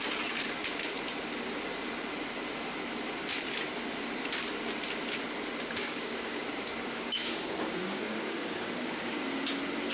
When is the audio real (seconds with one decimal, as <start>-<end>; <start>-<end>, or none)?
0.0-5.8; 9.2-9.9